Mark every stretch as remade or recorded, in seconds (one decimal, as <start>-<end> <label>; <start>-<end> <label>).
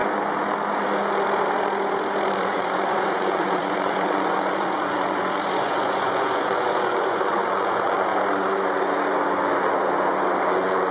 0.0-2.3 recorded; 2.3-8.1 remade; 8.1-10.5 recorded; 10.5-10.9 remade